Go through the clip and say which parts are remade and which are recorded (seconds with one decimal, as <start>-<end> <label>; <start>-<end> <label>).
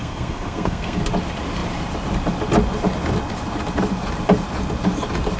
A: 0.0-1.0 remade; 1.0-5.4 recorded